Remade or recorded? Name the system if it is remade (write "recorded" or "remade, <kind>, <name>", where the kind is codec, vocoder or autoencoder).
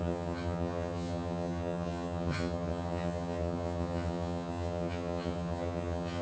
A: remade, vocoder, HiFi-GAN